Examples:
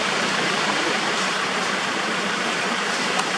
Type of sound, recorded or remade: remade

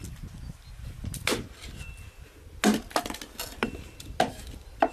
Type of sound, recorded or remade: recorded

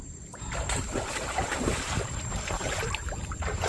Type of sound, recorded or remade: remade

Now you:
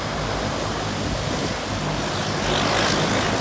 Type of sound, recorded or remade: recorded